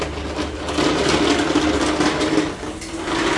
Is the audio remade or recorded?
recorded